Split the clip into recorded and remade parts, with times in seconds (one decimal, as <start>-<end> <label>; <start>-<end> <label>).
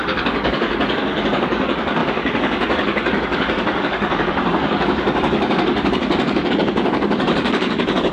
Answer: 0.0-8.1 remade